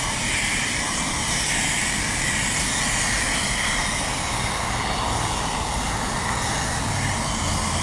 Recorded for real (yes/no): yes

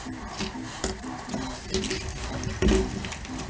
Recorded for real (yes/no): yes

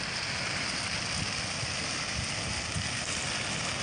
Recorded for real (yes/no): yes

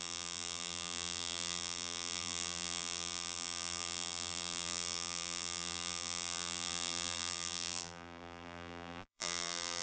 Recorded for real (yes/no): no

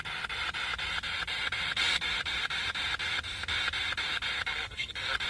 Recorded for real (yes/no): yes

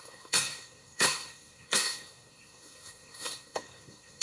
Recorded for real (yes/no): no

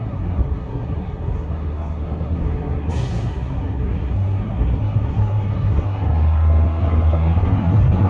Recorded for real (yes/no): no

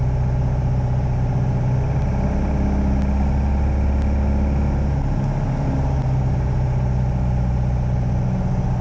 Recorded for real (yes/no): yes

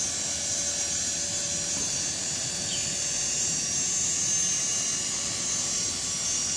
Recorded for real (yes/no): yes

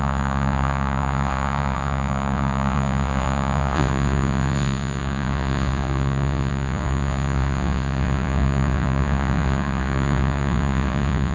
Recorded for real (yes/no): no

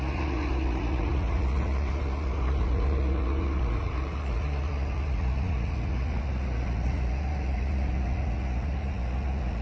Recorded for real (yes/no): no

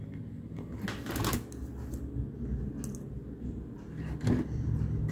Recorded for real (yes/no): yes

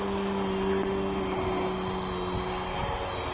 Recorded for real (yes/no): yes